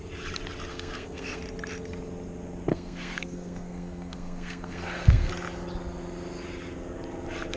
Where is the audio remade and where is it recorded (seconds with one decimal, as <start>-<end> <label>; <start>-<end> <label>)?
0.0-0.7 recorded; 0.7-1.4 remade; 1.4-2.7 recorded; 2.7-5.3 remade; 5.3-7.6 recorded